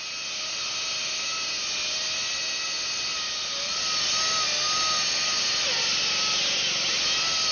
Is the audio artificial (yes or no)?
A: no